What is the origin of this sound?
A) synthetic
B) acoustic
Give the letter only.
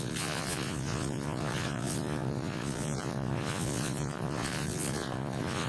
A